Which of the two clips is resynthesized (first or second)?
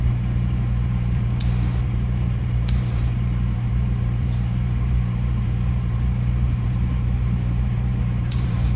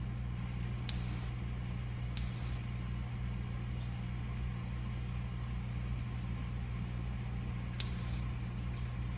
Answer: first